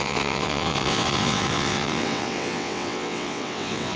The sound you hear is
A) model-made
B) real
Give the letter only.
A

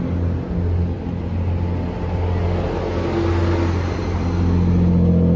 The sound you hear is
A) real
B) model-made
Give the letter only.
A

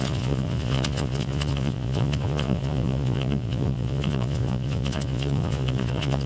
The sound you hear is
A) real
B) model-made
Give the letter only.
B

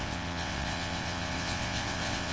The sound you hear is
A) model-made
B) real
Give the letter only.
A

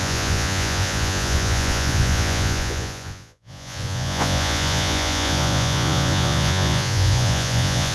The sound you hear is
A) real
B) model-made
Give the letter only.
B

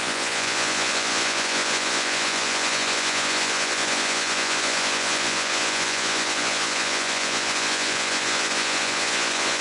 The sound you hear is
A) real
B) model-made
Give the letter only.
B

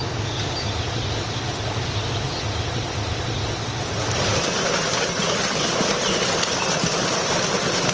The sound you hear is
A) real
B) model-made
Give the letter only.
A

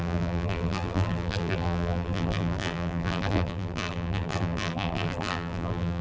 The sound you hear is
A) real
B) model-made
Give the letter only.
B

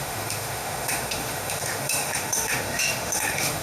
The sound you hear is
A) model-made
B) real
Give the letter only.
A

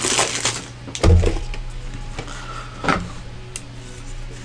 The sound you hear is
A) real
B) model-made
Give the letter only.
A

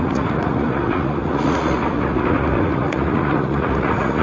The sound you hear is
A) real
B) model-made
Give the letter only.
B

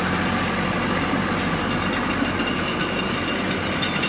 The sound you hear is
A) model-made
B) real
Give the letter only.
B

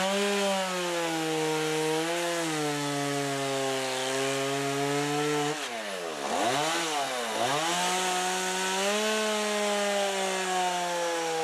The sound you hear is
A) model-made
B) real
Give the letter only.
B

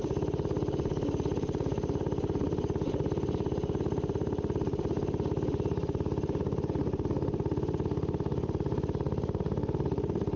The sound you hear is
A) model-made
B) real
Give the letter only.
B